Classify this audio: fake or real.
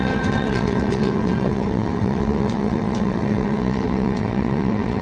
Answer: fake